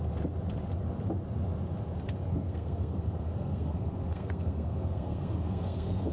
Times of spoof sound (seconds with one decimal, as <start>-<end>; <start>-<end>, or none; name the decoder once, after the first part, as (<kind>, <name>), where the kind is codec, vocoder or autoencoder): 2.3-6.1 (codec, SNAC)